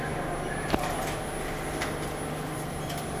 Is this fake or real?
real